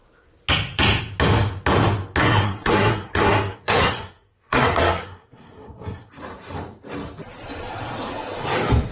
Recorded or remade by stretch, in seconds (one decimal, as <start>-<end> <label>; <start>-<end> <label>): 0.0-2.2 recorded; 2.2-6.1 remade; 6.1-8.9 recorded